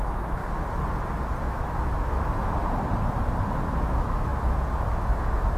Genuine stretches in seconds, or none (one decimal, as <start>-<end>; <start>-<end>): 0.4-1.4; 2.6-3.7